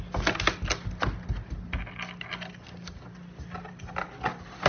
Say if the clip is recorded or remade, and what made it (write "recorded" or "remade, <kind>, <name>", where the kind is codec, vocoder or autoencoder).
recorded